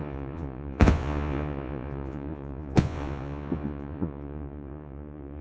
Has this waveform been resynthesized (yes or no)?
yes